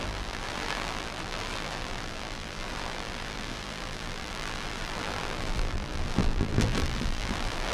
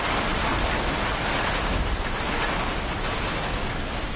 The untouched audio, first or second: second